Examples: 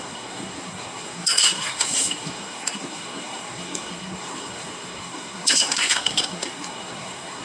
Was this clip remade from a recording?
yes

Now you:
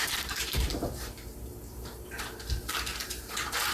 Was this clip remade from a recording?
yes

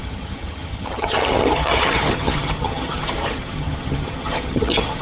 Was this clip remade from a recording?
yes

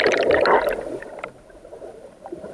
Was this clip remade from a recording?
no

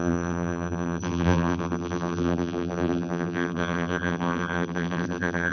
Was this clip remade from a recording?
yes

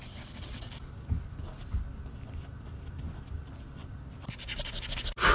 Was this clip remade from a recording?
no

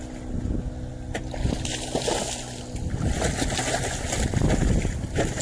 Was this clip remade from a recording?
no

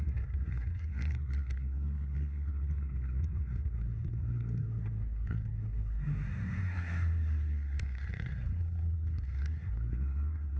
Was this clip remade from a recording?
yes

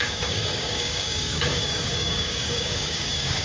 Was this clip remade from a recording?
yes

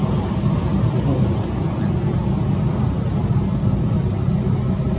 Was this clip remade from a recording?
no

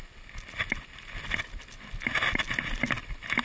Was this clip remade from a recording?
no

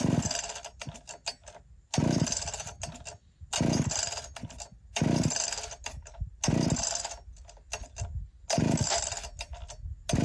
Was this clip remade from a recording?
no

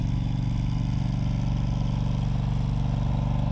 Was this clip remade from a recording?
no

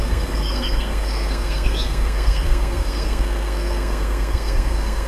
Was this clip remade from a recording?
yes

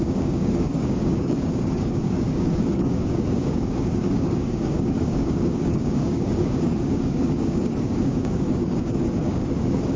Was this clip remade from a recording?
yes